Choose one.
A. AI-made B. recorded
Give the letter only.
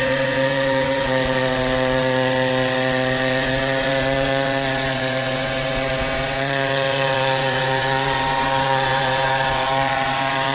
A